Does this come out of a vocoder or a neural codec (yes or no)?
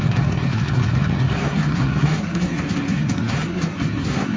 yes